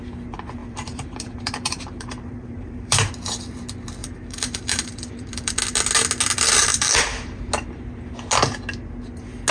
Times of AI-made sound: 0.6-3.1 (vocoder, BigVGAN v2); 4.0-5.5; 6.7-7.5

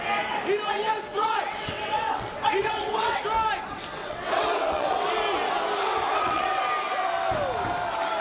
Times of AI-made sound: 1.1-3.2 (vocoder, WaveNeXt); 4.0-5.1; 6.1-6.6

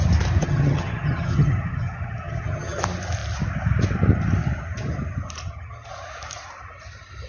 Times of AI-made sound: 0.4-2.8 (vocoder, HiFi-GAN); 5.4-5.9

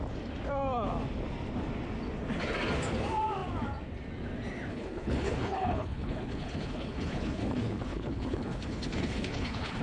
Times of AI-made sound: 4.7-9.8 (codec, HILCodec)

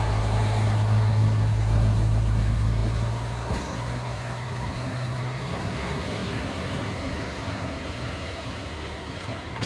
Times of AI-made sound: 0.0-9.7 (codec, SNAC)

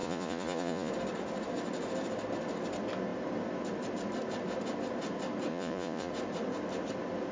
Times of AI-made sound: 0.0-0.9 (vocoder, Vocos); 5.5-6.1

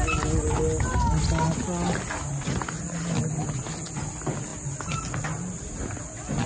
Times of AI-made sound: none